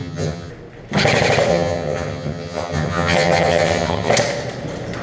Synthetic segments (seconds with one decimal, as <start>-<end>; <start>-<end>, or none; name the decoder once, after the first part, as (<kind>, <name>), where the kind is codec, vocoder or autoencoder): 0.0-0.5 (vocoder, HiFi-GAN); 1.5-4.1